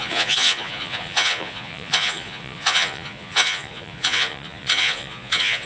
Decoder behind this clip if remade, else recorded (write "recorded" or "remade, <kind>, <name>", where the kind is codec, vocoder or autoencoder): remade, vocoder, Vocos